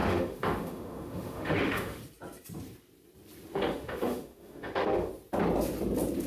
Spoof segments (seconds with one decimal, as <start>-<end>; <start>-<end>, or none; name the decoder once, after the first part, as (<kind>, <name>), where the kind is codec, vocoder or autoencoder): 0.0-2.0 (autoencoder, DAC-VAE); 3.5-5.1